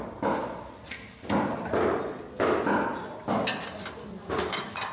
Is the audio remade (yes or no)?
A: no